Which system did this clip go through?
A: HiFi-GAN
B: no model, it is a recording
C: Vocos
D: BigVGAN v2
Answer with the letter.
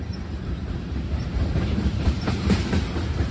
D